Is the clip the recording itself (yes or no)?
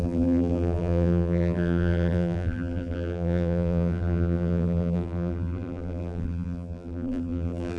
no